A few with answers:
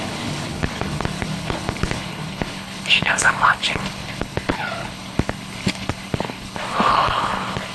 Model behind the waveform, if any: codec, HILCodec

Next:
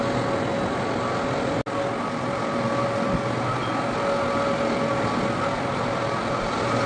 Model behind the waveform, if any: none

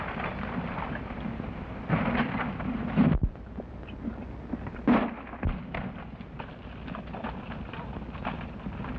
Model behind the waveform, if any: none